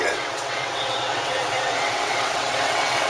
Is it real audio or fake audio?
fake